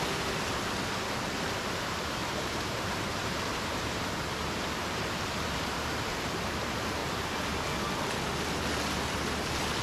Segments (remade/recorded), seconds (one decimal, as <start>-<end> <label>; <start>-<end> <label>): 0.0-2.2 recorded; 2.2-6.0 remade; 6.0-9.8 recorded